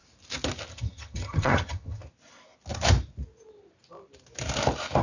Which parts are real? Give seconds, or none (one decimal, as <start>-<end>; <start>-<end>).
0.0-0.7; 2.0-5.0

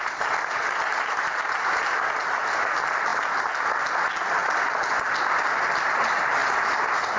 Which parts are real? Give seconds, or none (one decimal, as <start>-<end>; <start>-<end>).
0.0-7.2